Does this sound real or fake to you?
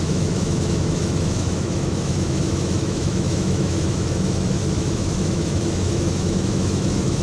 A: fake